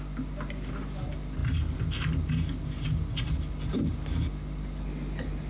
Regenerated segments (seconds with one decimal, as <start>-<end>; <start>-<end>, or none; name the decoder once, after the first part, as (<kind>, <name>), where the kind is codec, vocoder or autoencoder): none